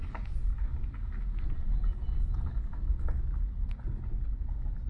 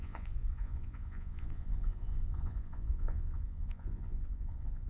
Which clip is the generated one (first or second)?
second